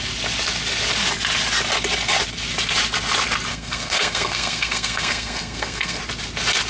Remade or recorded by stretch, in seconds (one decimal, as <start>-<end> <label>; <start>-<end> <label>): 0.0-3.5 recorded; 3.5-6.0 remade; 6.0-6.7 recorded